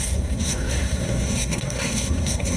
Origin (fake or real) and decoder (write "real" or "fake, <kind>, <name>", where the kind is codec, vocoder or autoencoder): fake, codec, SNAC